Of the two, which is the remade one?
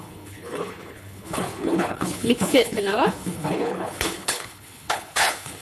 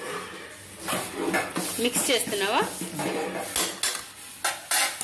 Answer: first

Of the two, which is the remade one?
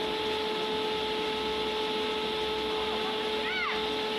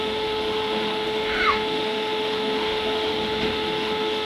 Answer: second